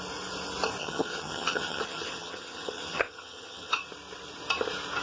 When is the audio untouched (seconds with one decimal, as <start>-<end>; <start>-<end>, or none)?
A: 0.0-0.8; 3.8-5.0